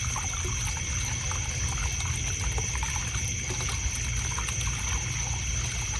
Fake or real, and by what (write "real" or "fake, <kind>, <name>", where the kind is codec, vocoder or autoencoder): real